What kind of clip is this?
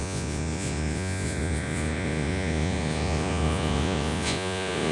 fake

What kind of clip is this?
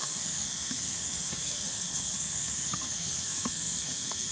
fake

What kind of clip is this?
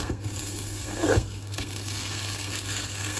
fake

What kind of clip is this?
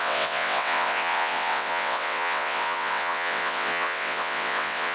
fake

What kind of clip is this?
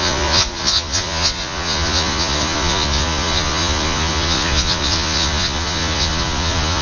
fake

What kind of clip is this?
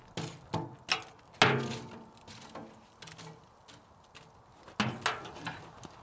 real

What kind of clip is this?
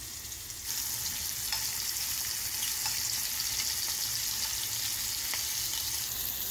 real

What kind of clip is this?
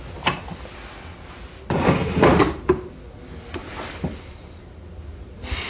real